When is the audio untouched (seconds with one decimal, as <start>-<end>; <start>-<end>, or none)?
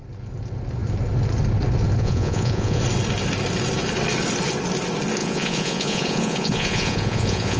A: 0.0-2.0; 2.8-5.2